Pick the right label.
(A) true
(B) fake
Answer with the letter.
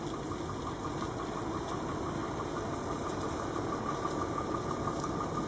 A